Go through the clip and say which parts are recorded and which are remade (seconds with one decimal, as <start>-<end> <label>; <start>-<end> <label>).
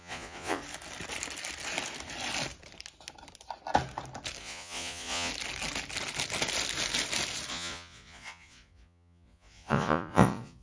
0.0-0.6 remade; 0.6-4.4 recorded; 4.4-5.3 remade; 5.3-7.5 recorded; 7.5-10.6 remade